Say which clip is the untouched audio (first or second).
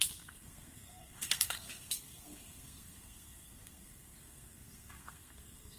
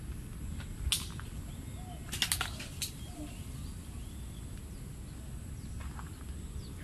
second